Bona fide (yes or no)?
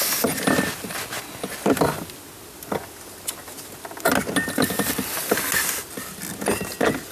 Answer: yes